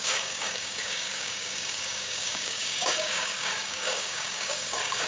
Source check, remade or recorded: remade